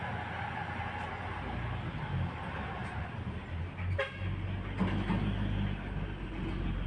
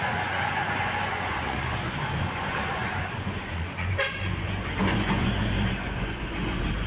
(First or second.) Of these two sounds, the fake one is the second